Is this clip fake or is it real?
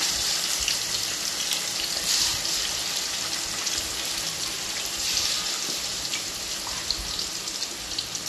fake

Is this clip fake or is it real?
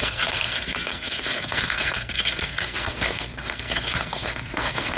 fake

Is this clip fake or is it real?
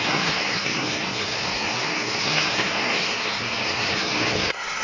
fake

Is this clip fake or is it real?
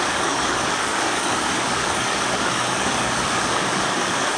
fake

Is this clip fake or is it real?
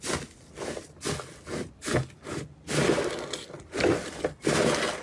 real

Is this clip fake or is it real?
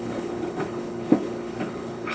fake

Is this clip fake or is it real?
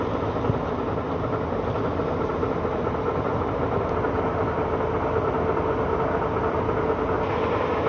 real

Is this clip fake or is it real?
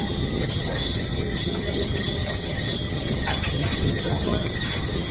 fake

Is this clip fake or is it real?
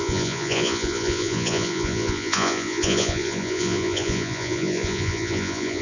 fake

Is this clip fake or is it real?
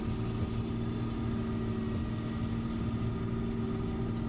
real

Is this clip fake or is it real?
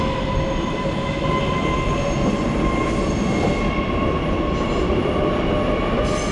real